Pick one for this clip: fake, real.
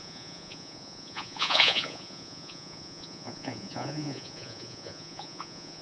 fake